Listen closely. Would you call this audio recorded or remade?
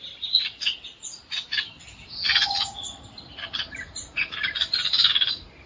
recorded